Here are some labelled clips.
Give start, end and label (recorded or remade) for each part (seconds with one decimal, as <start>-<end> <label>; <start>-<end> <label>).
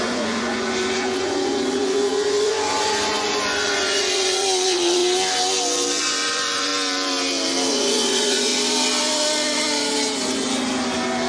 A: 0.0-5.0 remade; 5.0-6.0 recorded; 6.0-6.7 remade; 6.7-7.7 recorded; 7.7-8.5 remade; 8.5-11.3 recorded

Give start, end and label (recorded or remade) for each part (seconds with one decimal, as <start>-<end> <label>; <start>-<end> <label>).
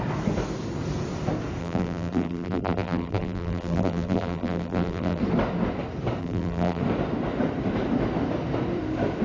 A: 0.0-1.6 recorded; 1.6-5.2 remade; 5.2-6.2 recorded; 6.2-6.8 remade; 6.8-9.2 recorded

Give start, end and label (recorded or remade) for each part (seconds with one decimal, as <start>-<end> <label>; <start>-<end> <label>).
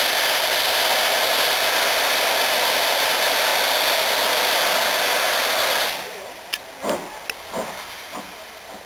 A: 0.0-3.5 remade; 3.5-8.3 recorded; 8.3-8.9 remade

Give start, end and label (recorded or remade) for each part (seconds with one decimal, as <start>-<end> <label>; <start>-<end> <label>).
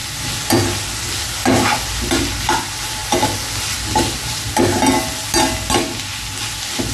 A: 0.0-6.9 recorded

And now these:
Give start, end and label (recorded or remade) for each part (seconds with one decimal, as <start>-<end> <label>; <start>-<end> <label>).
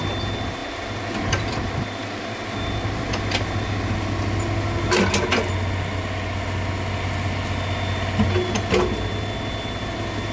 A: 0.0-10.3 recorded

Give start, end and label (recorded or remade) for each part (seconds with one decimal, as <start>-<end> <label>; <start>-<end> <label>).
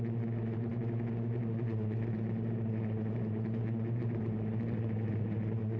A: 0.0-5.8 remade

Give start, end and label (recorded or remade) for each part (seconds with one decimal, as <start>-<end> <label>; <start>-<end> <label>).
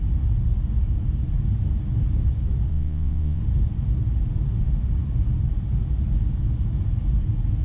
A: 0.0-2.7 recorded; 2.7-3.4 remade; 3.4-7.6 recorded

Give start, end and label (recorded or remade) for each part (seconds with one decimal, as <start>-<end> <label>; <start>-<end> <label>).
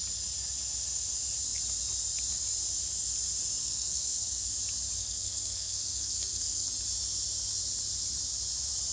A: 0.0-3.6 recorded; 3.6-4.5 remade; 4.5-5.0 recorded; 5.0-6.7 remade; 6.7-8.9 recorded